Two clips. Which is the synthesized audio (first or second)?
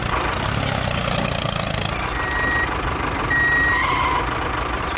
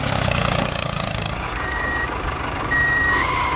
second